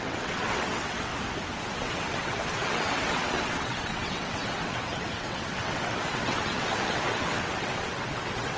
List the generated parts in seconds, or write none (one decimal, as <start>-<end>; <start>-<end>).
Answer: 0.0-1.1; 1.6-8.6